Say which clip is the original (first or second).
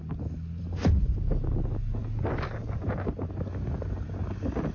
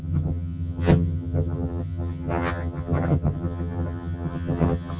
first